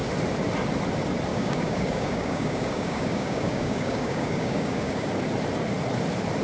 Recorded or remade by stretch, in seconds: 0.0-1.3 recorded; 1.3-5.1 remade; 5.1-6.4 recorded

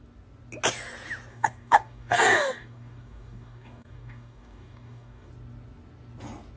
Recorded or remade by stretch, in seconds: 0.0-1.3 recorded; 1.3-5.3 remade; 5.3-6.6 recorded

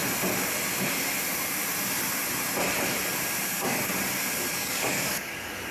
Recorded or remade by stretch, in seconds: 0.0-3.4 recorded; 3.4-3.9 remade; 3.9-4.5 recorded; 4.5-5.7 remade

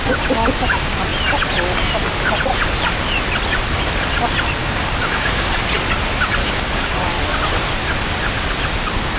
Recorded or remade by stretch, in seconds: 0.0-4.6 recorded; 4.6-5.6 remade; 5.6-6.4 recorded; 6.4-7.0 remade; 7.0-9.2 recorded

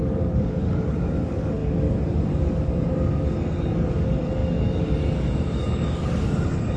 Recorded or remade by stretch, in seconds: 0.0-6.8 remade

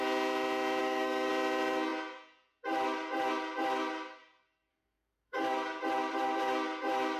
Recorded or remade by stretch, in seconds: 0.0-0.8 recorded; 0.8-1.3 remade; 1.3-4.7 recorded; 4.7-5.8 remade; 5.8-7.2 recorded

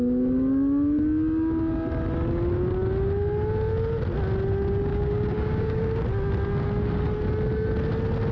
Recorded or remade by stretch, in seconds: 0.0-4.9 recorded; 4.9-6.0 remade; 6.0-8.3 recorded